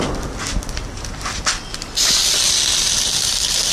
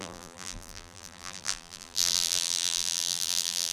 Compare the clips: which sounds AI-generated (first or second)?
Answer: second